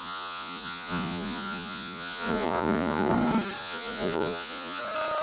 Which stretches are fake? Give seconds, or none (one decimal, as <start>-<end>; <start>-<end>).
0.0-3.1; 3.6-4.8